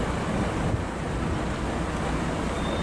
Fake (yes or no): no